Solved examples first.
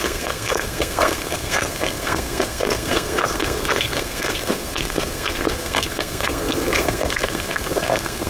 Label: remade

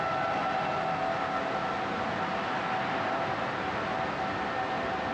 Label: recorded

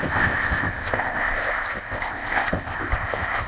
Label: remade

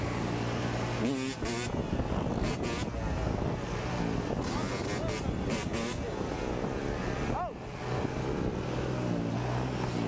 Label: recorded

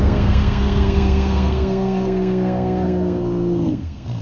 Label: remade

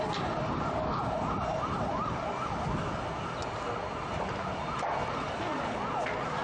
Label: recorded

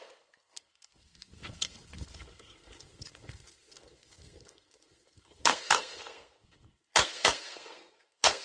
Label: remade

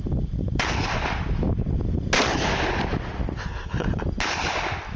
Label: recorded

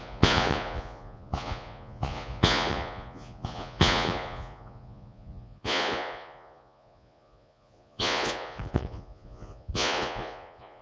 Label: remade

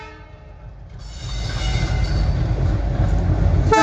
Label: recorded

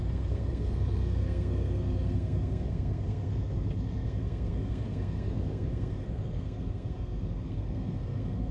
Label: remade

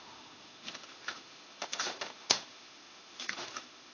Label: remade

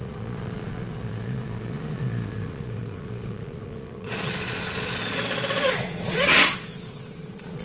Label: remade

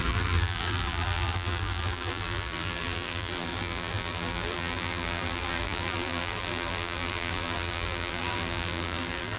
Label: remade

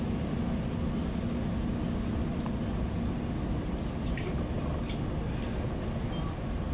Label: recorded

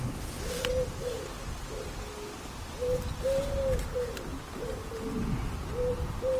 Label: recorded